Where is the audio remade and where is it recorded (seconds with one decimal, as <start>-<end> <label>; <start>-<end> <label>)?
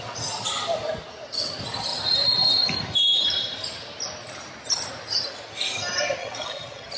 0.0-6.2 recorded; 6.2-7.0 remade